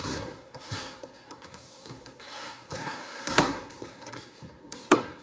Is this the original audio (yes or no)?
no